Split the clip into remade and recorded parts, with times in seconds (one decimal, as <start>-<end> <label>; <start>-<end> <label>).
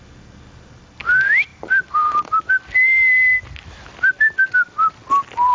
0.0-5.5 recorded